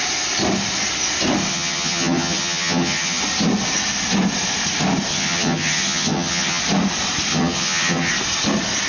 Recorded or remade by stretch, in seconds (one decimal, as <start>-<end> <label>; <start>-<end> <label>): 0.0-1.5 recorded; 1.5-3.2 remade; 3.2-5.1 recorded; 5.1-6.6 remade; 6.6-7.3 recorded; 7.3-8.1 remade; 8.1-8.9 recorded

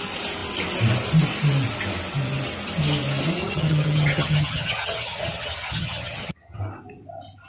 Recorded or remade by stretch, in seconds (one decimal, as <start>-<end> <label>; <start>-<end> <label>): 0.0-3.4 recorded; 3.4-6.6 remade; 6.6-7.5 recorded